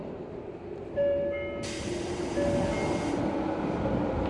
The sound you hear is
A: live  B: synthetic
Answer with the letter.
A